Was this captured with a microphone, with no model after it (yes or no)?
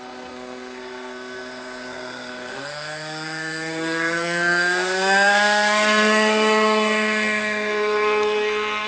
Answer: no